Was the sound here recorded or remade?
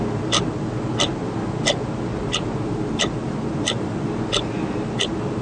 recorded